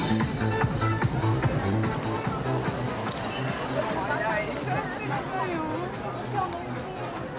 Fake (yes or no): no